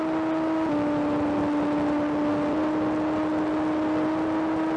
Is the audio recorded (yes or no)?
yes